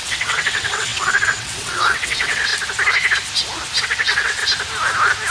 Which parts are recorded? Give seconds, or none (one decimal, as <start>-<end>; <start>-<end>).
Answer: 2.5-3.8; 4.4-5.3